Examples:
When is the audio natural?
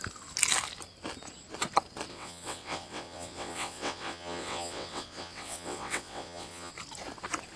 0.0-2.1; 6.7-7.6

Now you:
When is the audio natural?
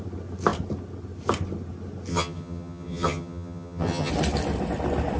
0.0-2.1; 4.1-5.2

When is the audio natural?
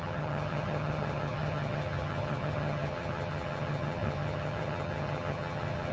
none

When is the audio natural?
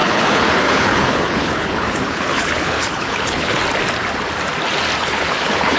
3.6-5.0